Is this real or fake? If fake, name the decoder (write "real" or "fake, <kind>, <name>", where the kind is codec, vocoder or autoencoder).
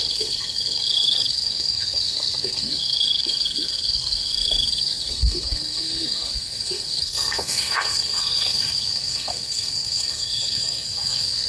fake, codec, SNAC